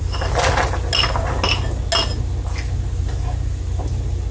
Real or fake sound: real